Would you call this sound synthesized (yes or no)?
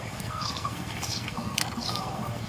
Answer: yes